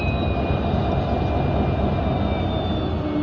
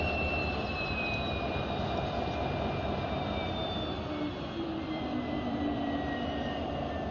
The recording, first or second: first